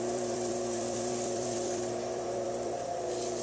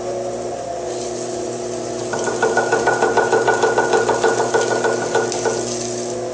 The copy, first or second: first